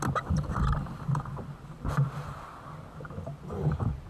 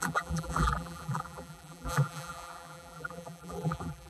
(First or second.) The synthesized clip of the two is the second